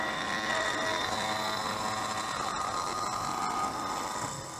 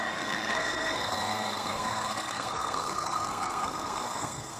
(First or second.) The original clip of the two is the first